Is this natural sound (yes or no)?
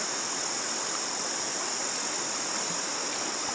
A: yes